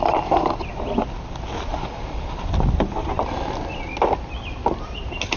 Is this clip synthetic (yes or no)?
no